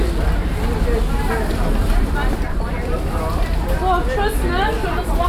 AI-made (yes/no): no